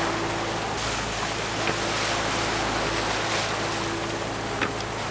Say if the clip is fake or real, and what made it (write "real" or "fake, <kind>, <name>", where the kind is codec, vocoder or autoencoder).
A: real